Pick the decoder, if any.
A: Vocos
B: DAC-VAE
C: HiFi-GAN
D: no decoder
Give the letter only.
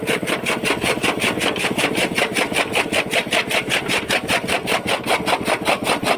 D